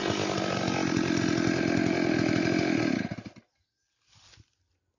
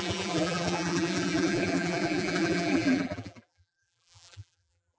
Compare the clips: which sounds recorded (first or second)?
first